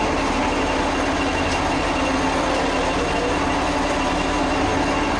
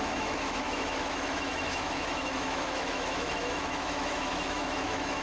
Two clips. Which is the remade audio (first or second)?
second